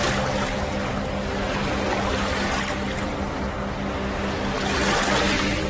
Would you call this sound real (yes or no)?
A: yes